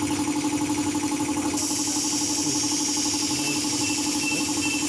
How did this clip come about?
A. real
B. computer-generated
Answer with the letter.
A